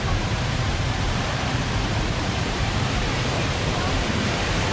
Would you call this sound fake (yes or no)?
yes